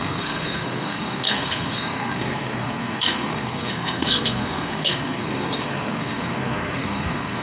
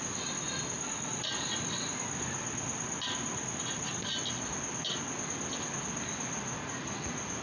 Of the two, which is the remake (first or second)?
first